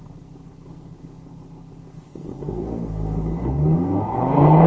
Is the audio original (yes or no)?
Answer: no